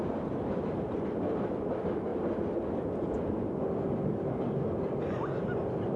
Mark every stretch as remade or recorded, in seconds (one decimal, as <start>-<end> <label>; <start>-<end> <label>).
0.0-6.0 recorded